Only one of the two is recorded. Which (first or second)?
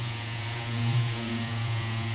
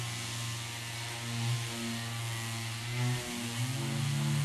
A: second